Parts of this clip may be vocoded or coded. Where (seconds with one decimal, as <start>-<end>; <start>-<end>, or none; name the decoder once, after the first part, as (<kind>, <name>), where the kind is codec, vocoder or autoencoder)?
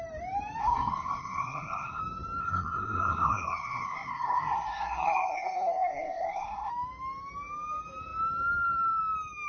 0.6-2.0 (codec, SNAC); 2.4-6.7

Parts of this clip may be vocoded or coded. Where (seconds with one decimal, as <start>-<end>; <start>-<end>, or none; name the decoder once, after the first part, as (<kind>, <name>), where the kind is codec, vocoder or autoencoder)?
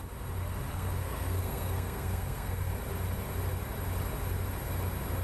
0.7-2.7 (codec, SNAC)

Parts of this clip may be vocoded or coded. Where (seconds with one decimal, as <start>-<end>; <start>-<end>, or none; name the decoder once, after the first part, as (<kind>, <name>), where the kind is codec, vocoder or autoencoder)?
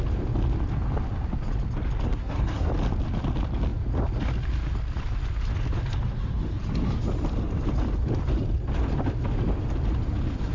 2.1-2.7 (codec, SNAC)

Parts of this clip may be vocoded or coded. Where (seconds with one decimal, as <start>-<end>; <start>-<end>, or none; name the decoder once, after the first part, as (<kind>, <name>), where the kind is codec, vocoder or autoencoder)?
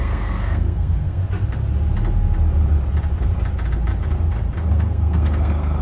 0.0-1.2 (codec, SNAC); 4.7-5.8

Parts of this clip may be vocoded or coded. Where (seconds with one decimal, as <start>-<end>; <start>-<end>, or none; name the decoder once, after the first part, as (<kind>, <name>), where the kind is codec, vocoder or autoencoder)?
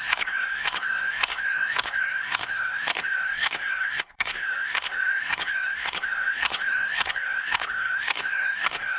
0.0-9.0 (codec, SNAC)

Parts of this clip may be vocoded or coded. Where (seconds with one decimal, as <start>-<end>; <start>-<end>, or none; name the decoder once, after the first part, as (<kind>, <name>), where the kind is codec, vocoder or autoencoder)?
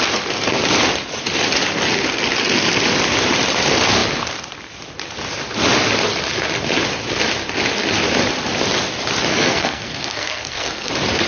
9.3-10.9 (codec, SNAC)